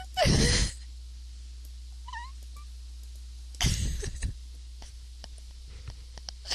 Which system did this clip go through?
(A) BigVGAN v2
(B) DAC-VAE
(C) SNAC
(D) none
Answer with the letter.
D